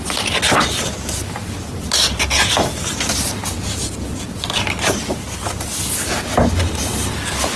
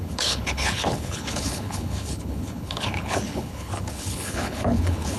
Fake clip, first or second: second